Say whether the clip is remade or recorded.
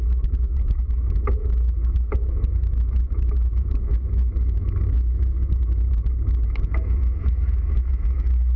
remade